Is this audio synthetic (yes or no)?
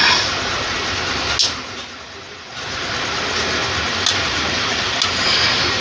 no